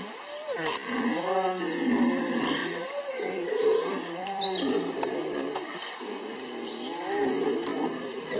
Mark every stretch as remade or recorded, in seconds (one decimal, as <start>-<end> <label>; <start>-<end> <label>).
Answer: 0.0-0.8 recorded; 0.8-1.3 remade; 1.3-2.6 recorded; 2.6-5.1 remade; 5.1-8.4 recorded